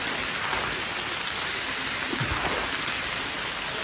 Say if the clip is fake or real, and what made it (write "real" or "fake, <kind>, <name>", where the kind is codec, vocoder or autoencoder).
real